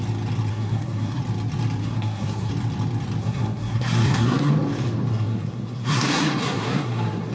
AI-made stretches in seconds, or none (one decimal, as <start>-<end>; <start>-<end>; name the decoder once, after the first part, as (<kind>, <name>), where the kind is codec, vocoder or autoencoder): 0.5-1.2 (codec, SNAC); 1.8-2.5; 3.2-4.5; 5.1-7.3